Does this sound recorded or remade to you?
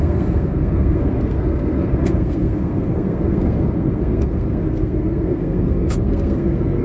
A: remade